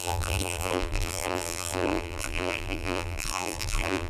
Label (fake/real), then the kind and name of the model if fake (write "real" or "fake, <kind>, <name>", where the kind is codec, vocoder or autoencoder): fake, vocoder, BigVGAN v2